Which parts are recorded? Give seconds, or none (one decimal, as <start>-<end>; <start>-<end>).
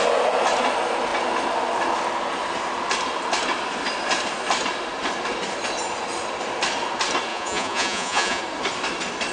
0.0-7.3; 8.4-9.3